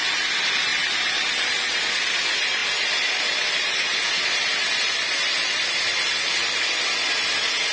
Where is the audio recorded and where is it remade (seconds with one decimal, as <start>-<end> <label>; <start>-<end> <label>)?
0.0-7.7 recorded